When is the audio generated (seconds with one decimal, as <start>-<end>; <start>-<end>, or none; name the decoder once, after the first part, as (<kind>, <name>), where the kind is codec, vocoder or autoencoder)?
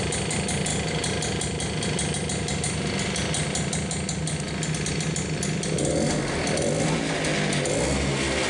none